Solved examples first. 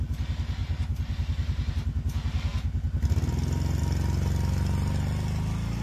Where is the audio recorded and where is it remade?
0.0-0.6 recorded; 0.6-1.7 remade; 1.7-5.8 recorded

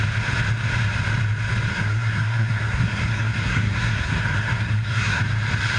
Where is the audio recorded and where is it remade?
0.0-1.7 recorded; 1.7-5.2 remade; 5.2-5.8 recorded

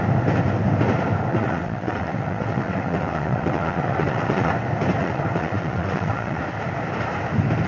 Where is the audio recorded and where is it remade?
0.0-1.3 recorded; 1.3-4.5 remade; 4.5-5.0 recorded; 5.0-6.4 remade; 6.4-7.7 recorded

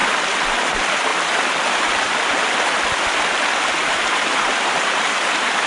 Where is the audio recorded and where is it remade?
0.0-0.6 recorded; 0.6-1.1 remade; 1.1-3.7 recorded; 3.7-5.7 remade

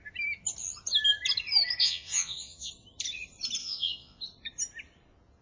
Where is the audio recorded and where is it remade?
0.0-1.8 recorded; 1.8-2.7 remade; 2.7-3.6 recorded; 3.6-4.2 remade; 4.2-5.4 recorded